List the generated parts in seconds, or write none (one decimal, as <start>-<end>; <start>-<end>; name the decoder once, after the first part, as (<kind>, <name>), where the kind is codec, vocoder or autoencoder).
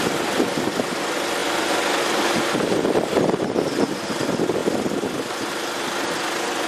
none